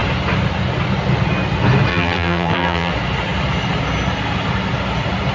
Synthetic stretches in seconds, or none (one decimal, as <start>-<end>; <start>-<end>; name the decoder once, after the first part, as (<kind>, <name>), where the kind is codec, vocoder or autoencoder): 1.9-2.9 (vocoder, BigVGAN v2)